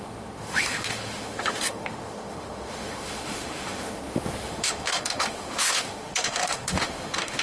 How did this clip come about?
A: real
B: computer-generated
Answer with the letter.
B